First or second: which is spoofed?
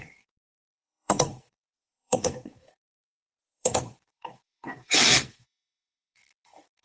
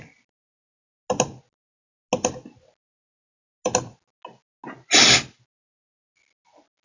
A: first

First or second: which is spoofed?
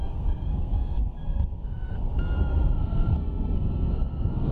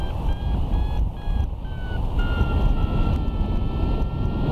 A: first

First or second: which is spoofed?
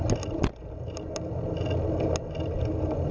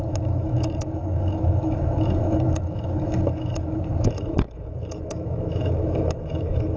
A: second